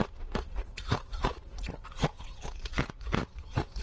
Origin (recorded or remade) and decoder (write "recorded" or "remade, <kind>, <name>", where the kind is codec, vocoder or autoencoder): remade, vocoder, Vocos